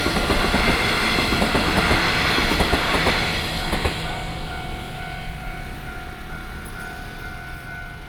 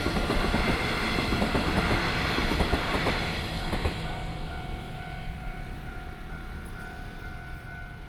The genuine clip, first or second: first